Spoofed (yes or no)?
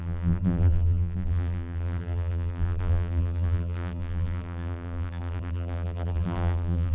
yes